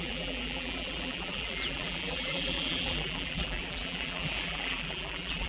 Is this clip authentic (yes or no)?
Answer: no